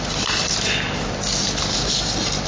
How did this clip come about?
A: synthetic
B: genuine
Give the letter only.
B